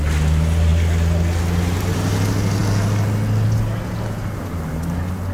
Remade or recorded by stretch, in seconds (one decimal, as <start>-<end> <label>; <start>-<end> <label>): 0.0-5.3 recorded